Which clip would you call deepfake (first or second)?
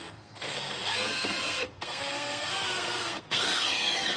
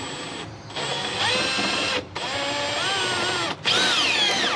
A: first